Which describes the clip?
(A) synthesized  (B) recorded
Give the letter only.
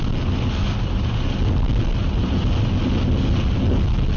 B